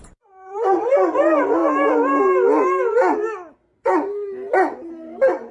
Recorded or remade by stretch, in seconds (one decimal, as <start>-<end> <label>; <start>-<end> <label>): 0.0-1.6 remade; 1.6-4.9 recorded; 4.9-5.5 remade